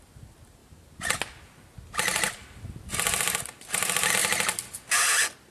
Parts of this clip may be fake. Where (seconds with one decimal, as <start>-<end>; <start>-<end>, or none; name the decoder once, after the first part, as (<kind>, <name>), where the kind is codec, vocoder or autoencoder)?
none